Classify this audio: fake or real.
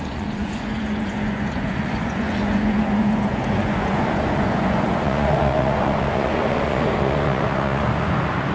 fake